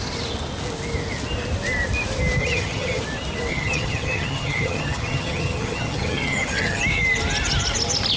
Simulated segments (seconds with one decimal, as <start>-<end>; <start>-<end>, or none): 2.4-3.0; 3.5-6.8